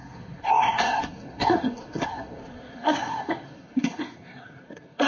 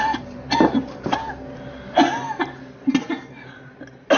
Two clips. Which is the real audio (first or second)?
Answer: second